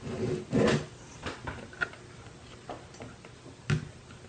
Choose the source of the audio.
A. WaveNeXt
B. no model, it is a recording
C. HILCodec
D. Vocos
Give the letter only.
B